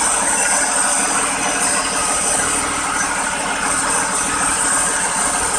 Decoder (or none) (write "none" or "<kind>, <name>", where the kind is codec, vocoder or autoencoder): none